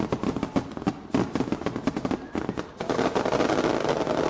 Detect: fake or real real